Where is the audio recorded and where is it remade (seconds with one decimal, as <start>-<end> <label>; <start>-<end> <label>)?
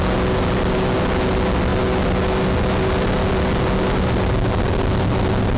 0.0-5.6 recorded